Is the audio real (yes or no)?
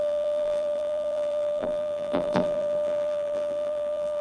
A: no